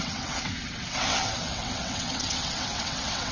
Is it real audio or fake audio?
fake